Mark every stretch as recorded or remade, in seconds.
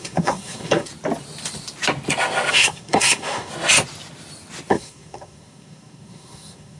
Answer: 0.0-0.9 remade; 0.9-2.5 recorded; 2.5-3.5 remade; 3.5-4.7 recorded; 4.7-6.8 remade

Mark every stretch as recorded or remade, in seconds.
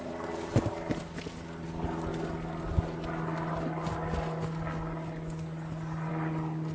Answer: 0.0-6.7 recorded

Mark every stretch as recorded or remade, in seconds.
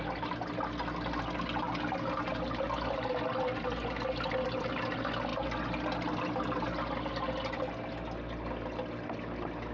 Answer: 0.0-9.7 recorded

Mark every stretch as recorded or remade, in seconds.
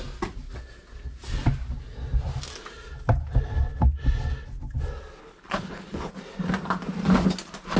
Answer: 0.0-5.2 recorded; 5.2-6.1 remade; 6.1-7.8 recorded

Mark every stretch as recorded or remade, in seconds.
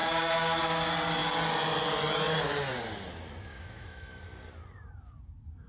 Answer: 0.0-3.5 recorded; 3.5-4.2 remade; 4.2-5.7 recorded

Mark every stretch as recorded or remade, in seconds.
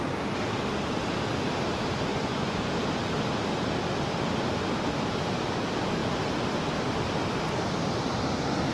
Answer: 0.0-2.1 recorded; 2.1-2.7 remade; 2.7-8.7 recorded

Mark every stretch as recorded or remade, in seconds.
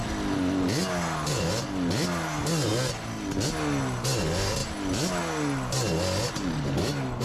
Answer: 0.0-7.2 recorded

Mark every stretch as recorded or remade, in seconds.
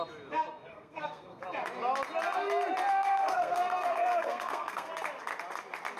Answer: 0.0-0.7 recorded; 0.7-1.4 remade; 1.4-2.9 recorded; 2.9-4.9 remade; 4.9-6.0 recorded